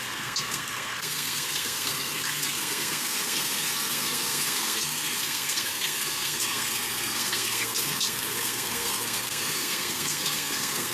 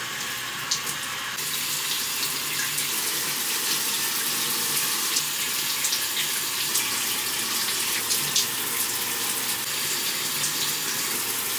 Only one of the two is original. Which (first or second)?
second